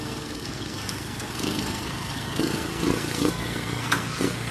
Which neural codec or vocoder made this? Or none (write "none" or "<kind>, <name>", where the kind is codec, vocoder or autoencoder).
codec, SNAC